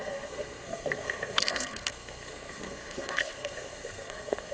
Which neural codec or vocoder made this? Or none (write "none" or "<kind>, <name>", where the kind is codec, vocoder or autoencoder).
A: codec, SNAC